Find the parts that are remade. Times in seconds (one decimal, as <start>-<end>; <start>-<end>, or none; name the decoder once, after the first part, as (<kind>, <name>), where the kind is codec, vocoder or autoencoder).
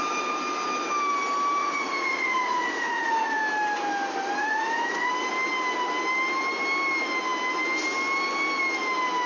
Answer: 1.6-3.4 (vocoder, Vocos); 4.4-5.1